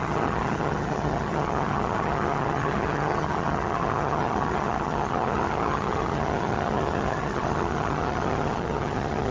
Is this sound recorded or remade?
remade